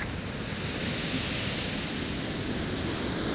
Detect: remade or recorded recorded